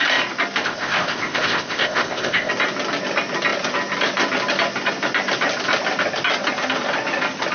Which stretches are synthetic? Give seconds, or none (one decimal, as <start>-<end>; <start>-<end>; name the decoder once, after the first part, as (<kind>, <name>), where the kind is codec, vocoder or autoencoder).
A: 0.6-2.5 (codec, ZipCodec)